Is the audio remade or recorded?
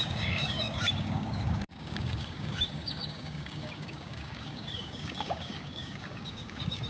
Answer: remade